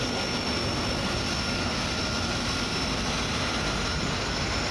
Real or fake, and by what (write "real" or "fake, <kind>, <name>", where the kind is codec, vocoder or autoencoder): real